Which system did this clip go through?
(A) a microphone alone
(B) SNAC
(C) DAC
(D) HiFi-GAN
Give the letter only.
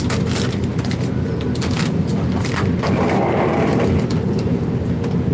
A